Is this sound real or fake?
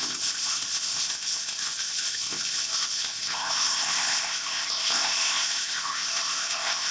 fake